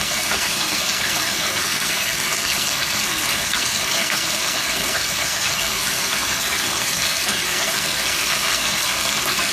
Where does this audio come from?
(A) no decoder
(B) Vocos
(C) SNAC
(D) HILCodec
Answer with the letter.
C